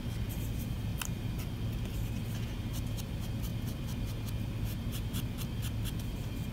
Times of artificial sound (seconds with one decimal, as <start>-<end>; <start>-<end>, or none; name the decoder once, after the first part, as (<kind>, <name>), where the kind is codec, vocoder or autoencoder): none